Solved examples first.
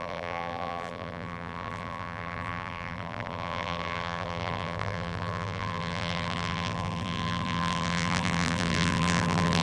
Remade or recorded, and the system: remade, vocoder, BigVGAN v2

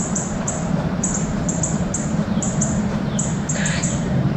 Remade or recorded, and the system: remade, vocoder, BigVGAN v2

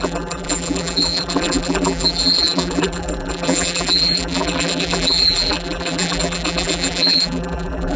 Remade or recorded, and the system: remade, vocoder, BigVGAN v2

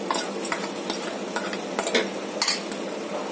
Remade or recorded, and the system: recorded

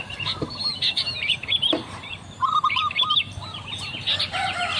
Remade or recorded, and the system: remade, vocoder, BigVGAN v2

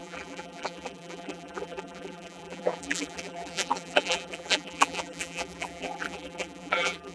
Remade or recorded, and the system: remade, vocoder, BigVGAN v2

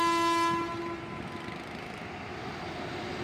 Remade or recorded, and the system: recorded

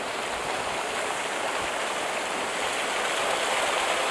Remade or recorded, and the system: recorded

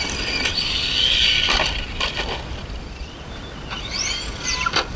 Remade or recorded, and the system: recorded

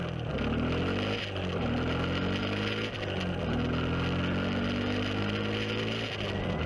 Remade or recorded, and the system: recorded